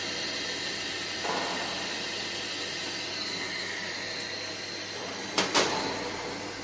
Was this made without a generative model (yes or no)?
yes